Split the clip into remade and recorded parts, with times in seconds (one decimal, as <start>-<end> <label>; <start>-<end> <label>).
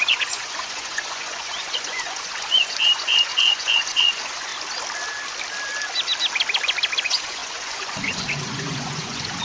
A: 0.0-4.5 remade; 4.5-7.0 recorded; 7.0-9.4 remade